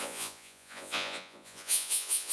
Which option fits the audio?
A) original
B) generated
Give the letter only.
B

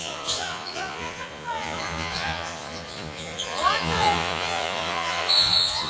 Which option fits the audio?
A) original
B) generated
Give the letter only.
B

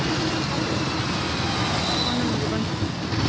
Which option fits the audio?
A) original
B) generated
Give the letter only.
A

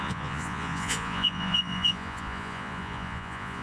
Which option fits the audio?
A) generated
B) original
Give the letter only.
A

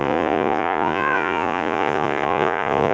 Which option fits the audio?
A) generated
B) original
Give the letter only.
A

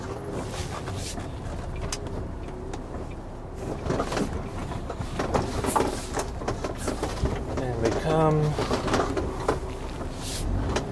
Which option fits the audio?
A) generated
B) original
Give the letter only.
B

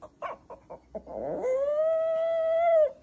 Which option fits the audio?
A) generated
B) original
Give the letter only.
B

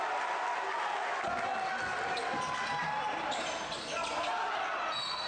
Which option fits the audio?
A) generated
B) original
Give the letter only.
B